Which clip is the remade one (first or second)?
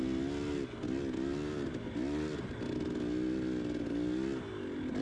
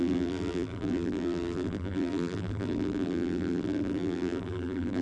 second